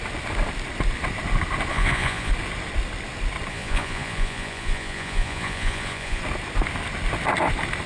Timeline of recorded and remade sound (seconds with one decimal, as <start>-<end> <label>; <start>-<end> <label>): 0.0-1.7 recorded; 1.7-2.3 remade; 2.3-3.5 recorded; 3.5-6.2 remade; 6.2-7.9 recorded